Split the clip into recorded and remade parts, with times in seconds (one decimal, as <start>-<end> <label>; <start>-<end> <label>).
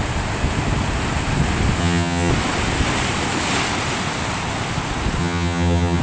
0.0-1.8 recorded; 1.8-2.3 remade; 2.3-5.2 recorded; 5.2-6.0 remade